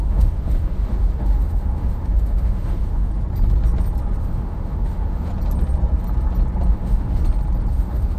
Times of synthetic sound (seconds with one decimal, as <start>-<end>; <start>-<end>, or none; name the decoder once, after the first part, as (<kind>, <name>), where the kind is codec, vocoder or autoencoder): 0.0-3.1 (autoencoder, DAC-VAE); 4.2-5.3; 6.7-7.2; 7.7-8.2

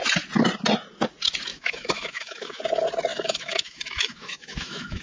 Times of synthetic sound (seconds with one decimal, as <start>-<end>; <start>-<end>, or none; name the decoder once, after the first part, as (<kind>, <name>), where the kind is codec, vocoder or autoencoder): 1.5-2.6 (autoencoder, DAC-VAE); 3.1-5.0

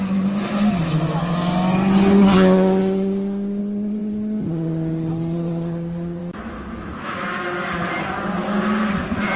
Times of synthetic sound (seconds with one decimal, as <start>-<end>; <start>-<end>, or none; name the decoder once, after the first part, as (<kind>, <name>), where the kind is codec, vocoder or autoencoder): 2.8-3.6 (autoencoder, DAC-VAE); 6.2-7.7

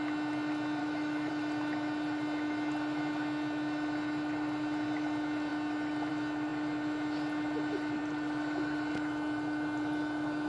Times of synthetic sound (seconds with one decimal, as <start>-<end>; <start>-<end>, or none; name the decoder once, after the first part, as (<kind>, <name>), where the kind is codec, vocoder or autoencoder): 0.8-1.3 (autoencoder, DAC-VAE)

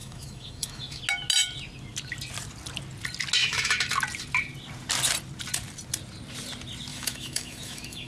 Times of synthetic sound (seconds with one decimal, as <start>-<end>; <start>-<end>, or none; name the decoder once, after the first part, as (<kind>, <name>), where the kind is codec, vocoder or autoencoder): 0.0-1.0 (autoencoder, DAC-VAE); 3.4-3.9; 6.9-8.1

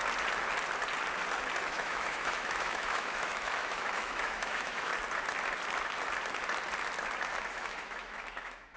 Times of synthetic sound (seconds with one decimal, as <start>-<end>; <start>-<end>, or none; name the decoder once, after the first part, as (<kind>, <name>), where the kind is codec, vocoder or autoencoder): 1.6-4.9 (autoencoder, DAC-VAE); 7.4-8.8

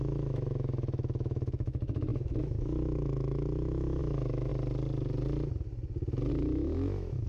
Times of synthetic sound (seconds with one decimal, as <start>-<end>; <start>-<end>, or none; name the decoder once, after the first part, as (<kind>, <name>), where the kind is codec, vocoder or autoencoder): 0.0-4.5 (autoencoder, DAC-VAE); 6.3-7.3

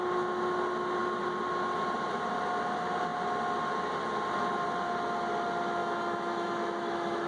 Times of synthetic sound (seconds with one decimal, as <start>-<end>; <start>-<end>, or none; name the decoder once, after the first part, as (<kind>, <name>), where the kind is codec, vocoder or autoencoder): 5.8-7.3 (autoencoder, DAC-VAE)